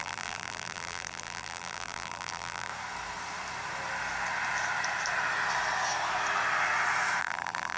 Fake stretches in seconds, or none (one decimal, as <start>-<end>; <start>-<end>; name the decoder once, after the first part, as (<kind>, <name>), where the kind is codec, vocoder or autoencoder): 0.0-2.7 (vocoder, BigVGAN v2); 7.2-7.8